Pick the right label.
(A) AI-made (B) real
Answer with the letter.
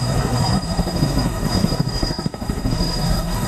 A